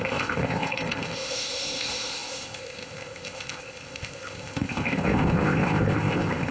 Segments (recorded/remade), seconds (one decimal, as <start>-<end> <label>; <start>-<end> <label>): 0.0-6.5 remade